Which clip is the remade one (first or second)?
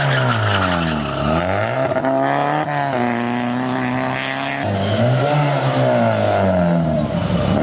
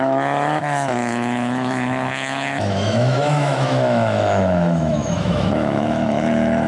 second